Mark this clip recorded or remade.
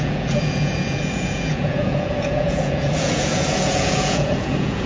remade